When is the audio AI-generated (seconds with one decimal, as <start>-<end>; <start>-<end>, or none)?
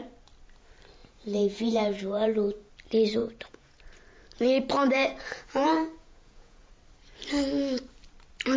1.0-2.7; 3.2-3.8; 4.7-6.7